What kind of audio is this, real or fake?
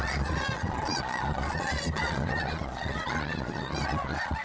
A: fake